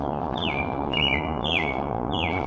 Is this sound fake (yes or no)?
yes